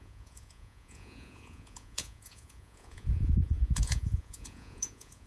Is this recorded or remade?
remade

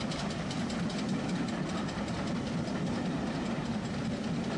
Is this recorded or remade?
recorded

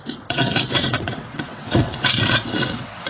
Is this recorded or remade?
remade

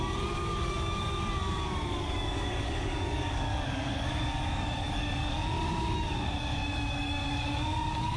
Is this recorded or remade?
remade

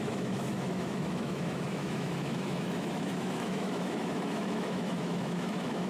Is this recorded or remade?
remade